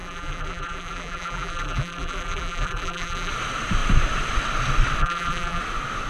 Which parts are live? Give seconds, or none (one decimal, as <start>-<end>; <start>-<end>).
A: 3.3-5.0; 5.6-6.1